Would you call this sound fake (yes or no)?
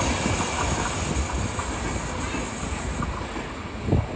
no